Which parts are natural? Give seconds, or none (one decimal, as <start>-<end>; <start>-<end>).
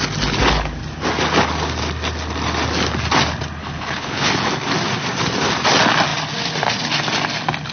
0.0-3.6; 4.3-7.7